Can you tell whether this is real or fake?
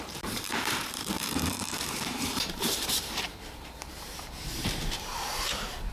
fake